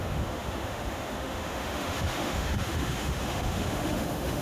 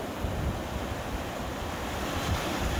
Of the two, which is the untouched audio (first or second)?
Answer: second